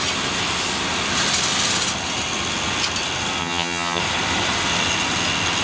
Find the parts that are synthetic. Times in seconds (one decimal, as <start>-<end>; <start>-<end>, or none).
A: 3.4-4.0

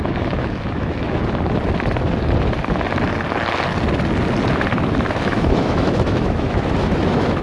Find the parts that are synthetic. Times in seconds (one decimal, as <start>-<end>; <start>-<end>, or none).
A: 0.0-1.2; 5.1-7.4

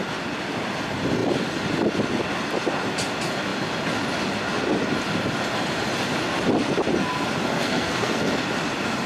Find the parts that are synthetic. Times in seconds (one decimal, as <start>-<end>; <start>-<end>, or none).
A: 7.5-8.3

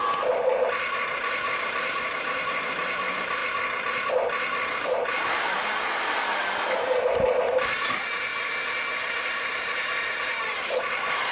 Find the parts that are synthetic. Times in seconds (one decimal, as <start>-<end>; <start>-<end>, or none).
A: 0.0-3.4; 5.1-8.3; 9.0-11.3

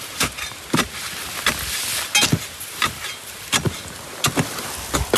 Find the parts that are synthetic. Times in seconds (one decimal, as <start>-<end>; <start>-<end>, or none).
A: none